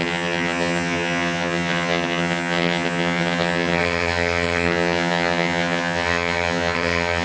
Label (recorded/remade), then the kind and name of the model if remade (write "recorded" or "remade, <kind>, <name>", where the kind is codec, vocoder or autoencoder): remade, vocoder, HiFi-GAN